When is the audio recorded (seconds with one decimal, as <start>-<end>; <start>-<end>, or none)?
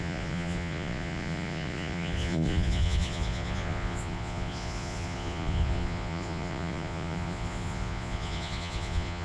none